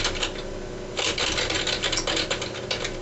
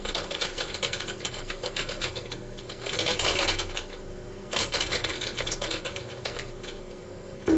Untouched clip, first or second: first